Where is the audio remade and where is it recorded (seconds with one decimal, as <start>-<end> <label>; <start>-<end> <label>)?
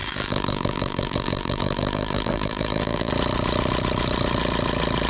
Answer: 0.0-3.1 remade; 3.1-5.1 recorded